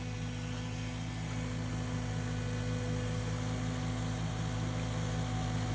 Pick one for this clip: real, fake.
real